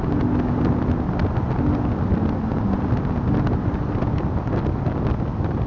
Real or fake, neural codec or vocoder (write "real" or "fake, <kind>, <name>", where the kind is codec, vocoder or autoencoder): real